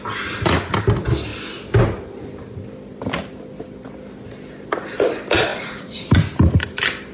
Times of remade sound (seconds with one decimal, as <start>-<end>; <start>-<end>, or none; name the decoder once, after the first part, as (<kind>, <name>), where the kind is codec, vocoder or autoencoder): 5.5-6.2 (vocoder, Vocos)